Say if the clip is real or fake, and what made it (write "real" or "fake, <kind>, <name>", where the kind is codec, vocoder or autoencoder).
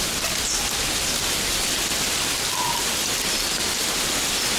real